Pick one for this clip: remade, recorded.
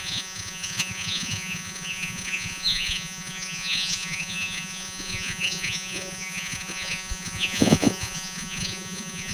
remade